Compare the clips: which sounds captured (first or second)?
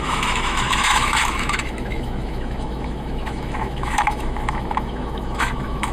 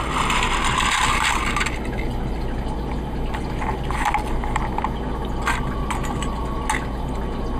second